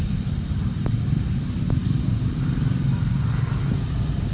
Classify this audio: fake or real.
real